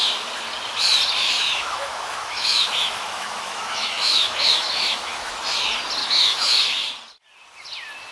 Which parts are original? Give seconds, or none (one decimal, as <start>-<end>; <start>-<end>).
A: 0.0-1.2; 5.3-6.0; 6.9-8.1